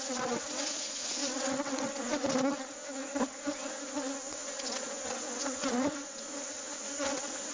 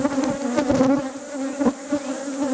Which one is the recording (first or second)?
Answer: second